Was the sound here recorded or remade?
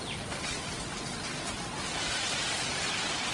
recorded